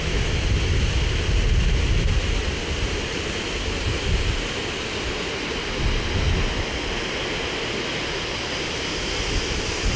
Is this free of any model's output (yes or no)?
yes